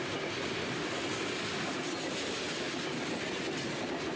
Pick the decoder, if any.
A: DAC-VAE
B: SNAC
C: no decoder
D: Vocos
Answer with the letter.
C